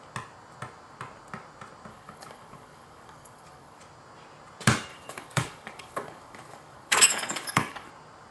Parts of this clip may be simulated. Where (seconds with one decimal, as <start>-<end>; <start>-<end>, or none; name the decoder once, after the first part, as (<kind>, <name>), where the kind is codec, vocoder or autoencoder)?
1.9-3.8 (codec, DAC); 4.9-7.9